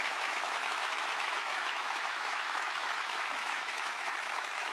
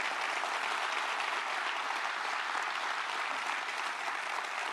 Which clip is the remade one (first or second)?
first